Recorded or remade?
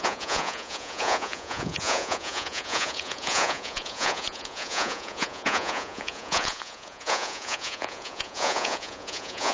remade